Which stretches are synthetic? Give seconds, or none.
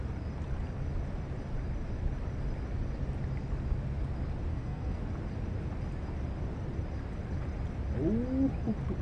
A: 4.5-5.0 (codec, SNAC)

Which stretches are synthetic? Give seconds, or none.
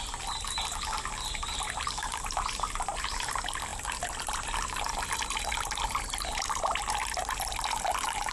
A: none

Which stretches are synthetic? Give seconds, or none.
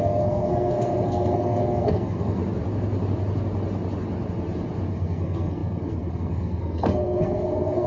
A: 0.0-2.4 (codec, SNAC); 4.9-7.9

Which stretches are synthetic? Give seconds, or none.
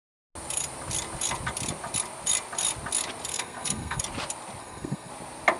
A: 3.3-4.0 (codec, SNAC); 4.6-5.1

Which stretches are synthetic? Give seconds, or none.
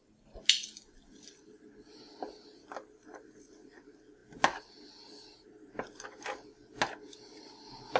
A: none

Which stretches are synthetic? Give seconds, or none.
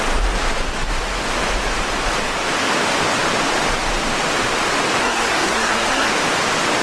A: 5.0-6.1 (codec, SNAC)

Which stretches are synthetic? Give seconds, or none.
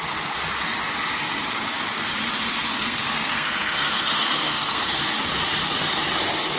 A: 2.7-5.0 (codec, SNAC)